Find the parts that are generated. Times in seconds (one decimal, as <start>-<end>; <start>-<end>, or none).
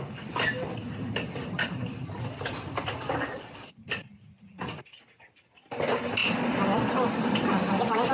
none